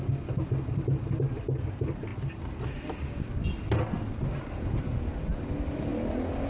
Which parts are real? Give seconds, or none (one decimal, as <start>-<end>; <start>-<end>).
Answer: 0.0-6.5